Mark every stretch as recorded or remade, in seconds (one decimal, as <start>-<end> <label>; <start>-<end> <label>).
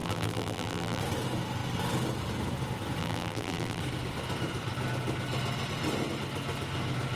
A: 0.0-1.0 remade; 1.0-3.0 recorded; 3.0-3.8 remade; 3.8-7.2 recorded